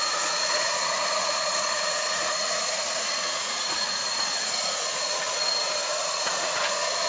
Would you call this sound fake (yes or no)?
yes